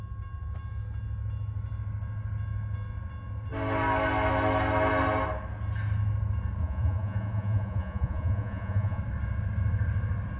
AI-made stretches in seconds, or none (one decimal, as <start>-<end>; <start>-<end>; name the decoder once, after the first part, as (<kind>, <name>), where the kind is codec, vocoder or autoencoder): 6.6-9.0 (vocoder, Vocos)